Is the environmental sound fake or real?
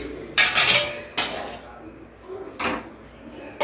real